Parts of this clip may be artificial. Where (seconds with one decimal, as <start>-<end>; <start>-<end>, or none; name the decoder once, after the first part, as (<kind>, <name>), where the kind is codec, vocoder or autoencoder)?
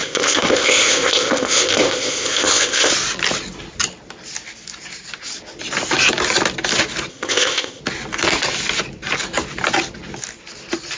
0.0-2.9 (codec, ZipCodec); 7.1-7.8